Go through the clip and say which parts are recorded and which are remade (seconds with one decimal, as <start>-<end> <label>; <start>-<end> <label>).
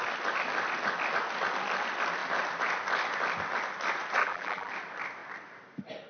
0.0-4.2 recorded; 4.2-4.7 remade; 4.7-6.1 recorded